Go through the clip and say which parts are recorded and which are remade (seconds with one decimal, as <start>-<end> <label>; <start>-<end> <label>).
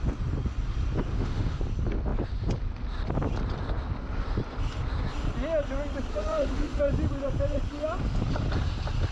0.0-1.1 recorded; 1.1-1.6 remade; 1.6-6.1 recorded; 6.1-6.8 remade; 6.8-9.1 recorded